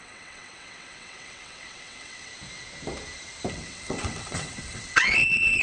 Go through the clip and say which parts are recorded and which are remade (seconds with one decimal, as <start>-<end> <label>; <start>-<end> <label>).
0.0-2.3 remade; 2.3-3.5 recorded; 3.5-5.6 remade